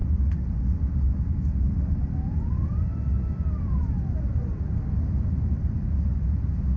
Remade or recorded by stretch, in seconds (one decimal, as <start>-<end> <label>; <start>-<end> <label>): 0.0-6.8 recorded